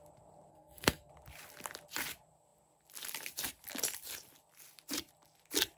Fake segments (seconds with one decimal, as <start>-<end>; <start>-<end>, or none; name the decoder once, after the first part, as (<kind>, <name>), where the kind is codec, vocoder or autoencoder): 0.5-1.1 (codec, SNAC)